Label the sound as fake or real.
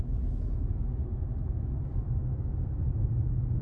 fake